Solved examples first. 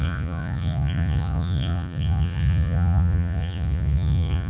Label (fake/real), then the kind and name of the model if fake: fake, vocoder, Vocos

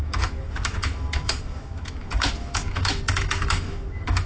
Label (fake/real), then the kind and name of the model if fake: fake, autoencoder, DAC-VAE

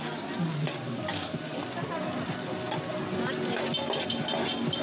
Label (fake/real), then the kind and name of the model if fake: real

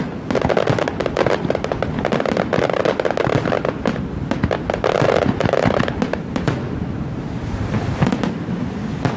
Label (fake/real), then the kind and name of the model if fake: real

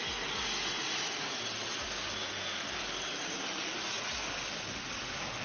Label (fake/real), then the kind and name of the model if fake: real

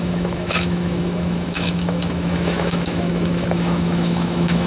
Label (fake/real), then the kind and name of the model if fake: fake, autoencoder, DAC-VAE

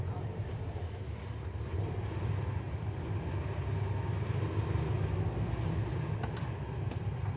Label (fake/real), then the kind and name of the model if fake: real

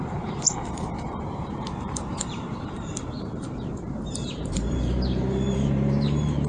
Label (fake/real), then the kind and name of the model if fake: fake, vocoder, BigVGAN v2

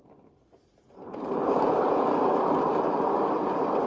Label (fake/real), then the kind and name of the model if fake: real